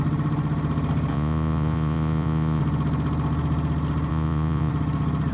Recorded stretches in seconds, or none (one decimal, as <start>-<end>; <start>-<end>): 0.0-1.1; 2.6-4.1; 4.7-5.3